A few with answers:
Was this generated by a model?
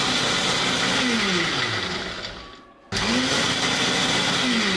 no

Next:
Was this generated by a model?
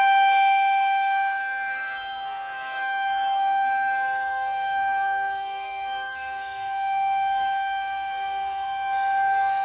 yes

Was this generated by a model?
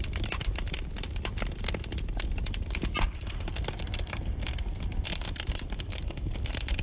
no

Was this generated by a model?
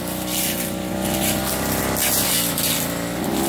no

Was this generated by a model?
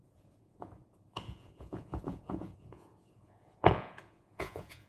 yes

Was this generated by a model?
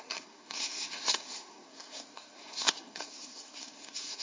yes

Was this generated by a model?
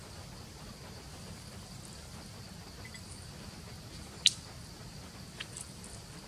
no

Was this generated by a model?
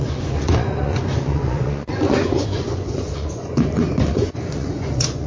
yes